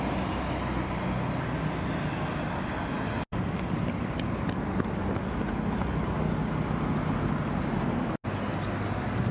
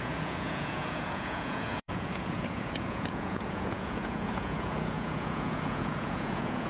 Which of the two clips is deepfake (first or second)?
second